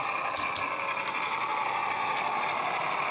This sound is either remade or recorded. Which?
recorded